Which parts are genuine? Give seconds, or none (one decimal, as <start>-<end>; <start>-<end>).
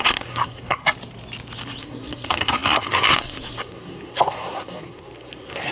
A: 0.8-1.8